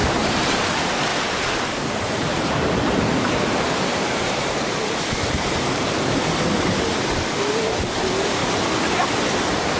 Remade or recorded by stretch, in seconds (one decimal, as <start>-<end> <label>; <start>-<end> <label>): 0.0-0.6 remade; 0.6-1.1 recorded; 1.1-4.8 remade; 4.8-9.8 recorded